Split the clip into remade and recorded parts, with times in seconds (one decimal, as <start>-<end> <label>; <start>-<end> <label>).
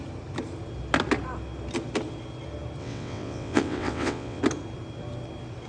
0.0-2.8 recorded; 2.8-4.4 remade; 4.4-5.7 recorded